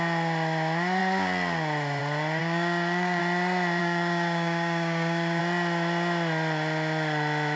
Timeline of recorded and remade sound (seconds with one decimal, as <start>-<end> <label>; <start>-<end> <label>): 0.0-2.4 recorded; 2.4-3.2 remade; 3.2-3.8 recorded; 3.8-5.4 remade; 5.4-7.6 recorded